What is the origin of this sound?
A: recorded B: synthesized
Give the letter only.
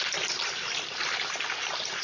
A